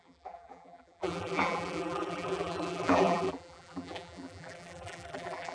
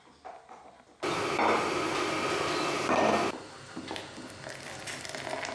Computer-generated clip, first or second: first